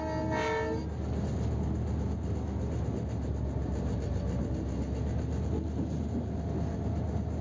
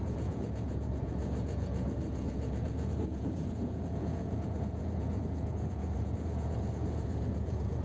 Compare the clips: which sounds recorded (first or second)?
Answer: first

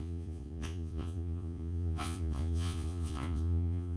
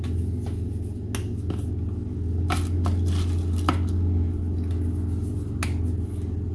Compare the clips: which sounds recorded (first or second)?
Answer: second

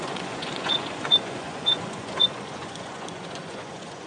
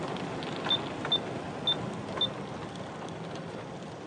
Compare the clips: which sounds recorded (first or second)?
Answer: second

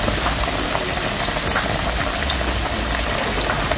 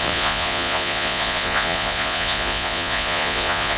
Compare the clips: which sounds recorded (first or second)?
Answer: first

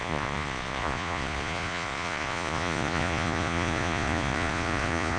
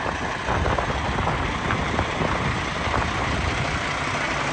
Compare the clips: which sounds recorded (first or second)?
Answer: second